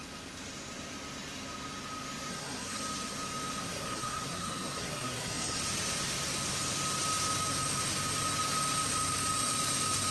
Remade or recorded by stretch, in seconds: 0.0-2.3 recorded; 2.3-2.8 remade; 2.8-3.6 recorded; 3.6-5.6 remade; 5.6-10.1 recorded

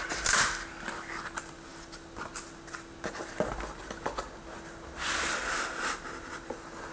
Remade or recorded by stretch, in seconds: 0.0-6.9 recorded

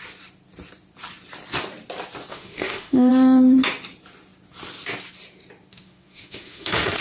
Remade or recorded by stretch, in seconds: 0.0-2.3 recorded; 2.3-3.1 remade; 3.1-5.7 recorded; 5.7-7.0 remade

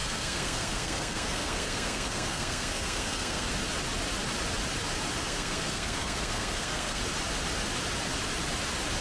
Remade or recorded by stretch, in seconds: 0.0-3.5 remade; 3.5-5.2 recorded; 5.2-7.0 remade; 7.0-9.0 recorded

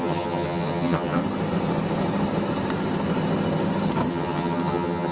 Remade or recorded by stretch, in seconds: 0.0-1.2 remade; 1.2-4.1 recorded; 4.1-5.1 remade

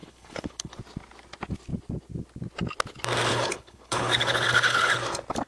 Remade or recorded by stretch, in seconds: 0.0-0.8 remade; 0.8-3.3 recorded; 3.3-4.9 remade; 4.9-5.5 recorded

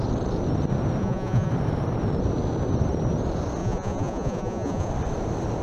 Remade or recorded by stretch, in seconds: 0.0-1.0 recorded; 1.0-1.5 remade; 1.5-3.6 recorded; 3.6-4.9 remade; 4.9-5.6 recorded

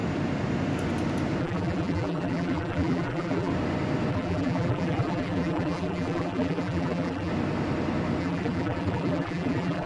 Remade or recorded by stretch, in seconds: 0.0-1.4 recorded; 1.4-3.5 remade; 3.5-4.1 recorded; 4.1-7.3 remade; 7.3-8.2 recorded; 8.2-9.9 remade